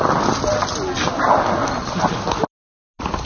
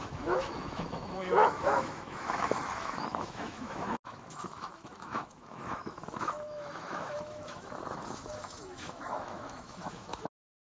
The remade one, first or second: second